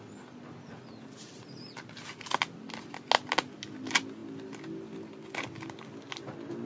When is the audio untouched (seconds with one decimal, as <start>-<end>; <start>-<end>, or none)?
0.0-6.7